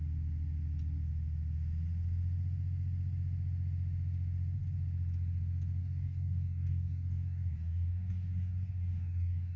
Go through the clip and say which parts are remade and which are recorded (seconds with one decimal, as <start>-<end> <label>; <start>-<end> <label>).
0.0-5.8 recorded; 5.8-9.6 remade